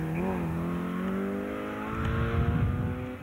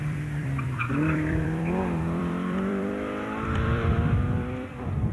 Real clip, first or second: first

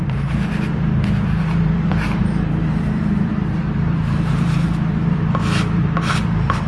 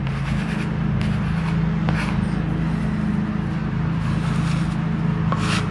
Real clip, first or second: second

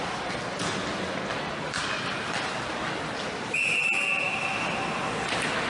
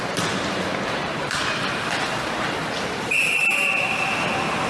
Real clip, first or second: first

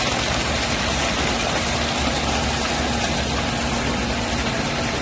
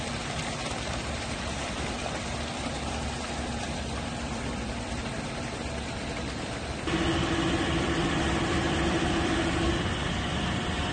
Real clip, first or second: first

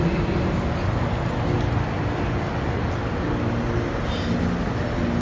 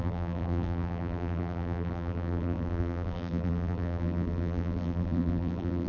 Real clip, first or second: first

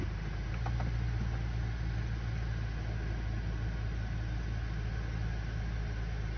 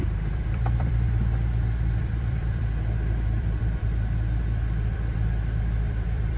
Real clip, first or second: first